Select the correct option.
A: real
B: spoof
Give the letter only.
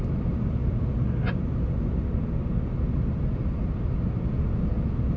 A